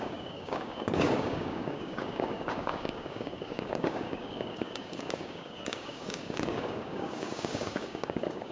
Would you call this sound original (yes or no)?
no